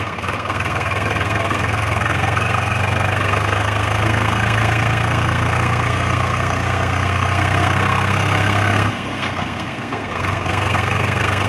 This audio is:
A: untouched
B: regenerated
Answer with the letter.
B